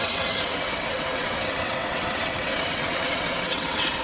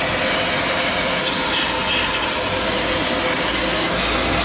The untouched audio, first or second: second